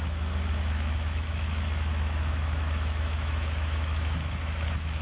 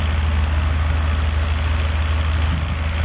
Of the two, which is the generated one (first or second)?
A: first